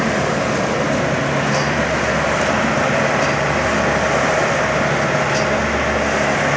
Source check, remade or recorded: recorded